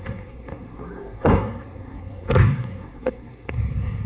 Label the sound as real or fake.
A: fake